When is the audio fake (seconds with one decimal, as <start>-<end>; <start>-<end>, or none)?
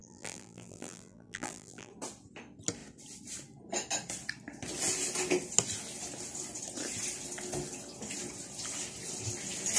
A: 0.0-1.9